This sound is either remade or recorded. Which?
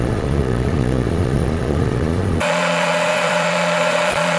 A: remade